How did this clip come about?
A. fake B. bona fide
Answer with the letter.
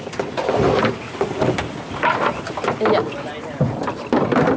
B